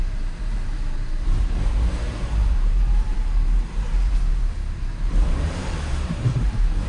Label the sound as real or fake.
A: fake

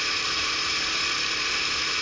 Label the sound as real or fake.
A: fake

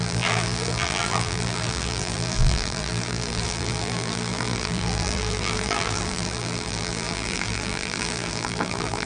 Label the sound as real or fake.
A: fake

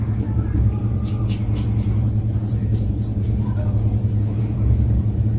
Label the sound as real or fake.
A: fake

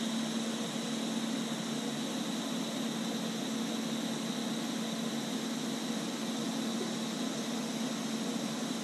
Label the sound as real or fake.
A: real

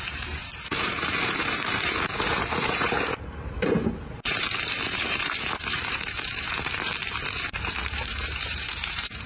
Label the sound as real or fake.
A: fake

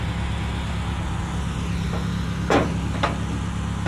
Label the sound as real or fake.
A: real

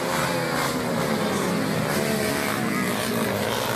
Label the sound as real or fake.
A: real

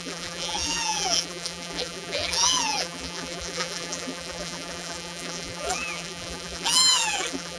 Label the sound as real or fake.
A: fake